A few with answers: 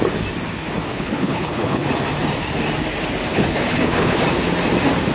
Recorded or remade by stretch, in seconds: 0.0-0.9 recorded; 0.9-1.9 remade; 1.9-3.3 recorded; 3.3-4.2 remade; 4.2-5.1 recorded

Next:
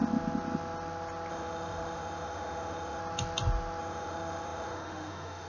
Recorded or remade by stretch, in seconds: 0.0-1.3 recorded; 1.3-3.0 remade; 3.0-3.8 recorded; 3.8-5.5 remade

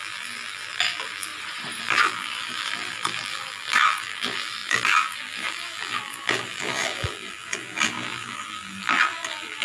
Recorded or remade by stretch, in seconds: 0.0-1.3 remade; 1.3-1.8 recorded; 1.8-9.6 remade

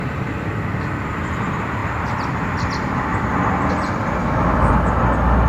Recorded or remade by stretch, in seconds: 0.0-4.2 recorded; 4.2-4.7 remade; 4.7-5.5 recorded

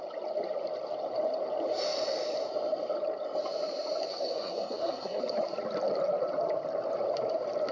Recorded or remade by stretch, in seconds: 0.0-4.1 recorded; 4.1-5.2 remade; 5.2-7.7 recorded

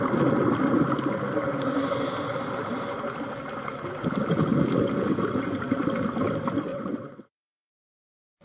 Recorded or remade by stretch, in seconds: 0.0-6.7 recorded; 6.7-7.7 remade; 7.7-8.4 recorded